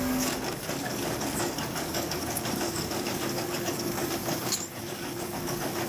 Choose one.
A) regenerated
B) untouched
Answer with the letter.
A